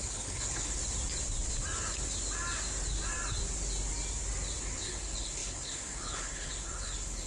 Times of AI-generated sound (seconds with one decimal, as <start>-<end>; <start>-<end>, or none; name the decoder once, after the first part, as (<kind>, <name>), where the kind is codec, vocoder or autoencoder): 0.0-0.8 (codec, HILCodec); 4.6-7.3